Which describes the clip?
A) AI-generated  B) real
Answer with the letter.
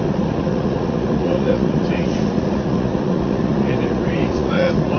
A